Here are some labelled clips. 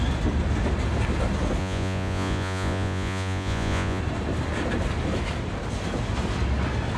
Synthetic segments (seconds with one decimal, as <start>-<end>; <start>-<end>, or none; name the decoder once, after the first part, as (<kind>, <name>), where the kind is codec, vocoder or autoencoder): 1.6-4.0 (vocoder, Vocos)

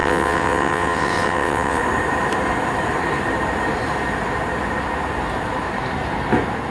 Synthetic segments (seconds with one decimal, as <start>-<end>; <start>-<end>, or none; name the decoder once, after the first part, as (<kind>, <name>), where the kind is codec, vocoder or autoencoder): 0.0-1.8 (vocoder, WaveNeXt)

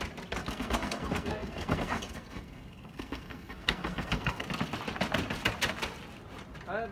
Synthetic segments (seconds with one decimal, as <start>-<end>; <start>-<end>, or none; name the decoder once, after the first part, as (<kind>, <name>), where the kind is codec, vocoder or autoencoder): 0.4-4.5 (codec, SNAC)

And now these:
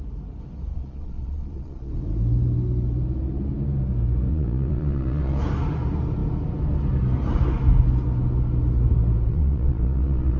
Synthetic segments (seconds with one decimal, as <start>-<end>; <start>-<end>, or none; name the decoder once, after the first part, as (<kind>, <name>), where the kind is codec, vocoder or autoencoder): 0.7-1.9 (vocoder, Vocos); 4.3-5.4; 9.3-10.4

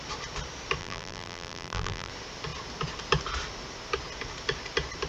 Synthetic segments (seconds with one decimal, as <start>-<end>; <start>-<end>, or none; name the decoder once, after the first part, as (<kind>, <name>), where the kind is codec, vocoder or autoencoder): 0.8-2.1 (vocoder, BigVGAN v2)